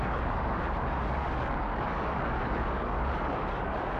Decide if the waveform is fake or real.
fake